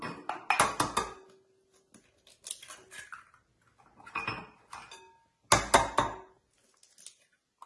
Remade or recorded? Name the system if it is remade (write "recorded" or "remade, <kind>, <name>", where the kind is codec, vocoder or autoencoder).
recorded